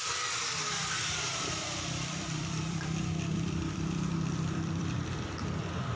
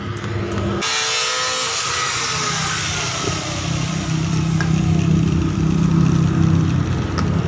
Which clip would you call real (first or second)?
second